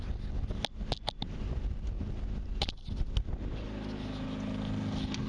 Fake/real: real